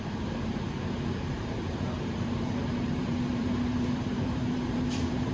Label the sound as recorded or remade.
remade